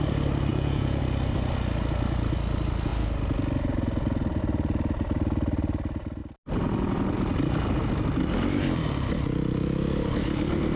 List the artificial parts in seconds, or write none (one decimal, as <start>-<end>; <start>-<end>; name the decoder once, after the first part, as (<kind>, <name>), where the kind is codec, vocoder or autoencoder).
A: 0.5-1.0 (vocoder, Vocos)